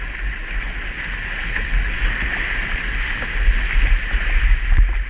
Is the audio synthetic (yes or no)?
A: no